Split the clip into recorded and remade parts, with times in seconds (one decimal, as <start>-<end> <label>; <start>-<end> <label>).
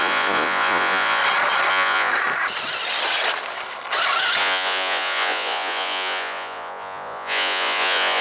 0.0-1.2 remade; 1.2-1.7 recorded; 1.7-2.1 remade; 2.1-4.4 recorded; 4.4-8.2 remade